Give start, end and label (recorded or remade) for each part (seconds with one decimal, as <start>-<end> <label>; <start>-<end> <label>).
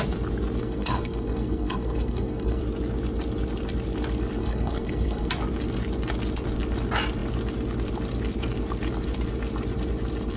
0.0-0.6 recorded; 0.6-2.6 remade; 2.6-4.4 recorded; 4.4-5.3 remade; 5.3-10.4 recorded